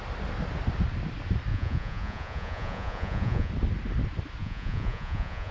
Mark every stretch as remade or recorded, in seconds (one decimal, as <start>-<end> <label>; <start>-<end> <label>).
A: 0.0-1.5 recorded; 1.5-3.5 remade; 3.5-4.4 recorded; 4.4-5.5 remade